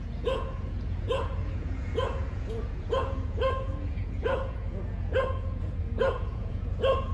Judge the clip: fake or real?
fake